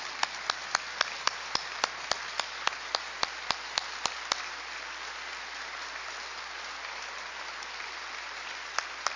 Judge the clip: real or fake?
real